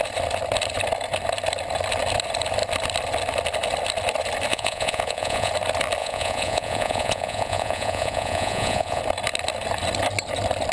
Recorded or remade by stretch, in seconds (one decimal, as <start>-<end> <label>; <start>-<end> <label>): 0.0-4.5 recorded; 4.5-5.5 remade; 5.5-6.0 recorded; 6.0-9.0 remade; 9.0-10.7 recorded